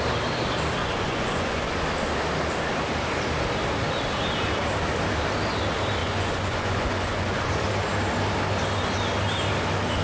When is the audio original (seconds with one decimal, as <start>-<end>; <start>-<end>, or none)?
0.0-0.8; 1.8-6.0; 7.5-10.0